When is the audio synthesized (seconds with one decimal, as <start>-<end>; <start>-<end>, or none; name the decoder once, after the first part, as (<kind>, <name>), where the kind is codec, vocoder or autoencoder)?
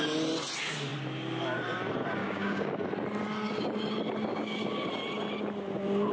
2.2-2.8 (codec, DAC); 4.3-4.9